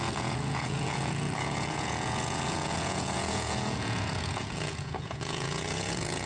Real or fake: fake